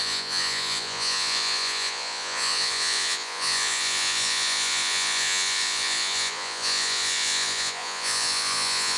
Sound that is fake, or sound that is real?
fake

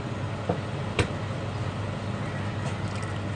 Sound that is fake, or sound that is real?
real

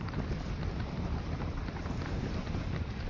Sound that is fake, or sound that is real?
real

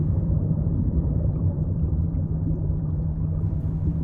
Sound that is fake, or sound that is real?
fake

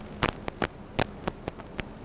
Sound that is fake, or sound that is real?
real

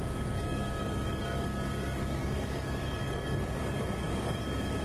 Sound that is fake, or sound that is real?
fake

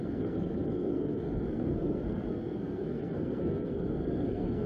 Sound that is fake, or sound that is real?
fake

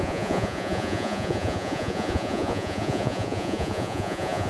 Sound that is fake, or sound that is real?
fake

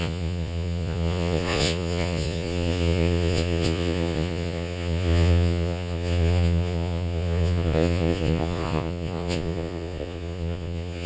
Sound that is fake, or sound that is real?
fake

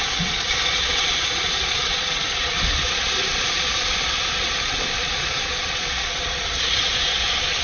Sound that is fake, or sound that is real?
fake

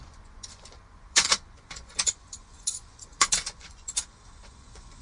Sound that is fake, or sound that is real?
fake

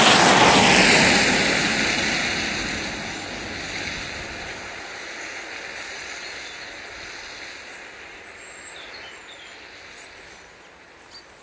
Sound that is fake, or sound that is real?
real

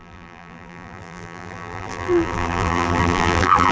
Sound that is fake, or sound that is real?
fake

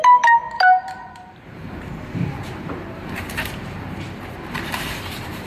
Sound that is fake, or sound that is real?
fake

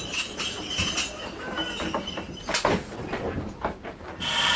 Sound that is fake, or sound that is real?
real